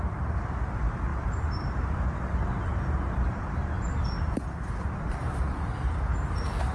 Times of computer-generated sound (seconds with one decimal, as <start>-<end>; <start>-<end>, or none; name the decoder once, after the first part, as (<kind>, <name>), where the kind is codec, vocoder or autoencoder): 1.1-3.7 (vocoder, BigVGAN v2)